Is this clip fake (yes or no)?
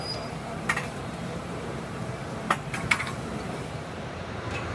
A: yes